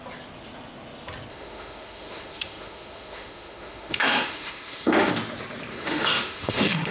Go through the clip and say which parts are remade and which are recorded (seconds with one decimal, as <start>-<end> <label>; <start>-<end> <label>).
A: 0.0-1.3 recorded; 1.3-5.1 remade; 5.1-5.7 recorded; 5.7-6.9 remade